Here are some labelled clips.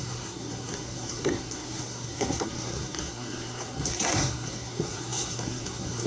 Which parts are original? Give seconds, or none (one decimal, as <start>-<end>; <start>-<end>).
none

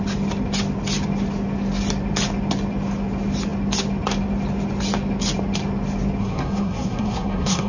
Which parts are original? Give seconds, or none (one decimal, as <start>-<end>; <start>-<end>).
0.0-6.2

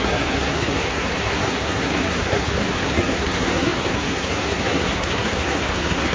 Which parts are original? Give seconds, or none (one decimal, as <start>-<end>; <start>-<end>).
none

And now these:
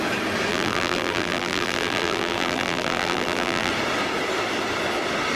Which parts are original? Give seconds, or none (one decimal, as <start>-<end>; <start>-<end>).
0.0-0.5; 3.7-5.4

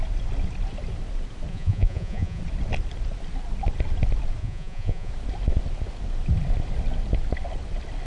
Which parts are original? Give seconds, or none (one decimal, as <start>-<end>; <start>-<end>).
0.0-1.5; 2.4-4.4; 5.1-8.1

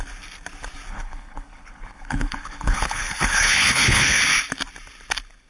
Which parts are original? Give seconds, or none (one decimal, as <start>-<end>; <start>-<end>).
0.0-0.9; 4.2-5.5

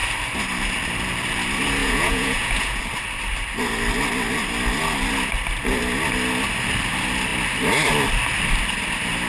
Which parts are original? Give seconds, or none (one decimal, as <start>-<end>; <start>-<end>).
0.0-1.8; 2.8-9.3